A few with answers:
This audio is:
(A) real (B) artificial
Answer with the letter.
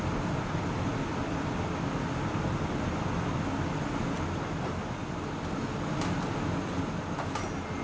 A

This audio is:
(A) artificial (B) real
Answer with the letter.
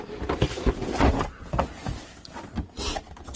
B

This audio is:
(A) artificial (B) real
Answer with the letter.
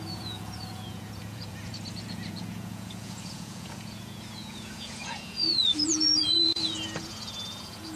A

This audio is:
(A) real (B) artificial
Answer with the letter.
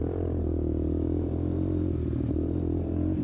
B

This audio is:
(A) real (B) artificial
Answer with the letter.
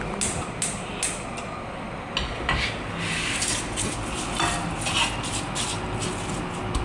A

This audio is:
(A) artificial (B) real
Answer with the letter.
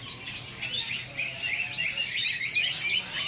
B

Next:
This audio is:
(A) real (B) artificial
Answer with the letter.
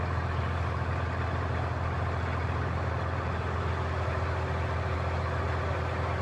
A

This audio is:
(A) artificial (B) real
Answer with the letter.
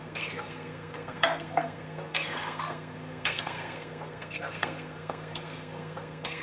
A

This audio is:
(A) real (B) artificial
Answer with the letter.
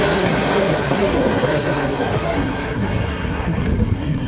B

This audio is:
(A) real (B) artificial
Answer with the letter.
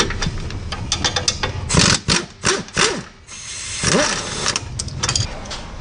A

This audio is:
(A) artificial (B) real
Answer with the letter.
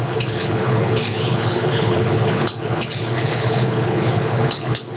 A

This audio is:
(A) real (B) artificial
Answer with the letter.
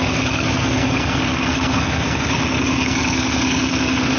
B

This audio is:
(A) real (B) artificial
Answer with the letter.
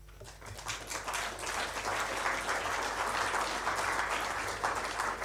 A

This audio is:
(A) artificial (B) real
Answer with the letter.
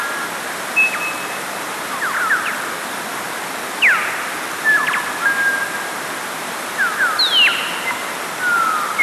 B